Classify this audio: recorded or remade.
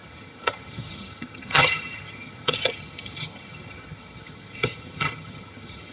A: remade